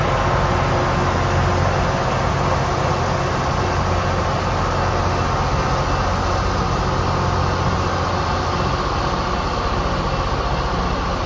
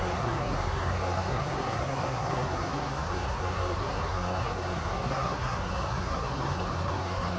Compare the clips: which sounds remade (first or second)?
second